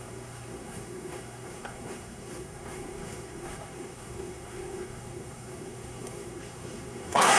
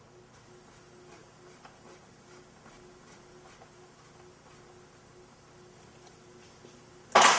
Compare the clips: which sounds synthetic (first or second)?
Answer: first